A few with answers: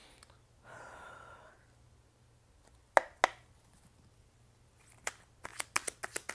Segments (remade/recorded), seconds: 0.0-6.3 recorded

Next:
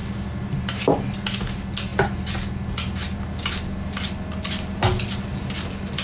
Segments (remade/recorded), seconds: 0.0-6.0 recorded

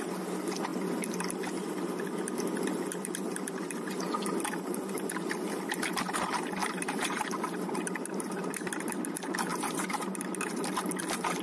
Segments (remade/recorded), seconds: 0.0-6.6 recorded; 6.6-8.7 remade; 8.7-9.5 recorded; 9.5-11.0 remade; 11.0-11.4 recorded